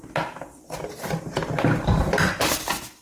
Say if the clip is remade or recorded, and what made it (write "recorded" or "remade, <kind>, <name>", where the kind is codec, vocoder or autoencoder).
recorded